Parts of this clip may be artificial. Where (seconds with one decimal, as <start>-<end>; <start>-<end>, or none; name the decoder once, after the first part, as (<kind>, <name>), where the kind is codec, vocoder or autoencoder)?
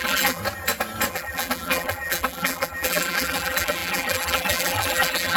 0.0-0.4 (vocoder, BigVGAN v2); 1.1-5.4